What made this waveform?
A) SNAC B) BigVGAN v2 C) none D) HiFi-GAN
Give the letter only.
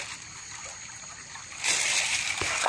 C